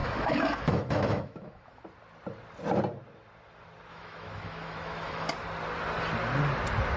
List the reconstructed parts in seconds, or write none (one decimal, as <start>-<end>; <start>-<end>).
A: 0.0-1.8; 3.9-5.3